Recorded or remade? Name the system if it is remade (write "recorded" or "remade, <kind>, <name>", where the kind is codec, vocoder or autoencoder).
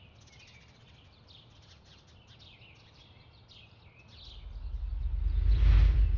recorded